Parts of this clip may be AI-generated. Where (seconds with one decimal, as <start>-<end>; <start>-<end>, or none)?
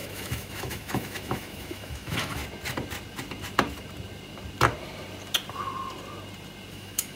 0.0-2.4; 6.7-7.2